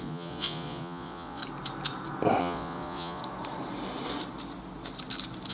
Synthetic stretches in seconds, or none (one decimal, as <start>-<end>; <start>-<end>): 0.0-1.4; 2.4-3.2